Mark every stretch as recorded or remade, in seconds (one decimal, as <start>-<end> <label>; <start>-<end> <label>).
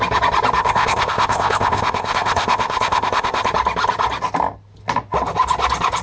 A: 0.0-0.6 recorded; 0.6-3.5 remade; 3.5-6.0 recorded